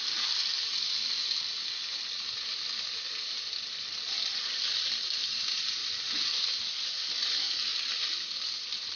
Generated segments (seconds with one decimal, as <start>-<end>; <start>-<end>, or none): 0.0-1.5; 3.2-5.8; 7.2-9.0